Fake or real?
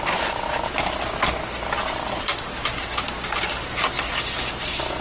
real